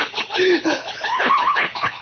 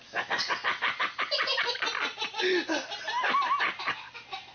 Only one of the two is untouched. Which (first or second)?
second